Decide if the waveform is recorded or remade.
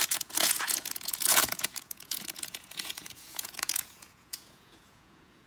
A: remade